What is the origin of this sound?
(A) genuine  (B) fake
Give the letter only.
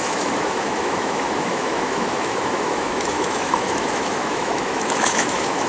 B